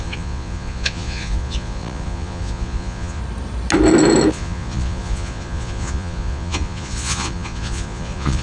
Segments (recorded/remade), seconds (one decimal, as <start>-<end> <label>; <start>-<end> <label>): 0.0-3.2 remade; 3.2-4.3 recorded; 4.3-8.4 remade